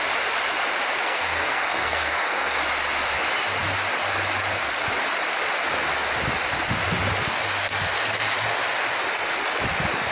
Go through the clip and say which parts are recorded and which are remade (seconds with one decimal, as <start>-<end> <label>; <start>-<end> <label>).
0.0-1.0 recorded; 1.0-2.6 remade; 2.6-10.1 recorded